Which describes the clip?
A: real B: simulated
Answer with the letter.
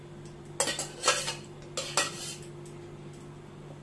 A